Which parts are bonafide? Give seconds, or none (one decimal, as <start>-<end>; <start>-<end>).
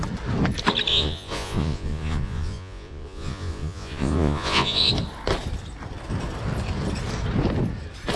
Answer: 0.0-0.9; 4.9-8.2